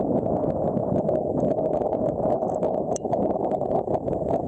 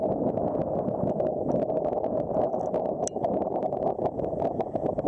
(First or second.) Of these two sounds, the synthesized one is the first